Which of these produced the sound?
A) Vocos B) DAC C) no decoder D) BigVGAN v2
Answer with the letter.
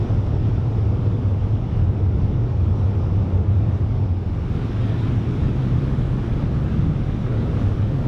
B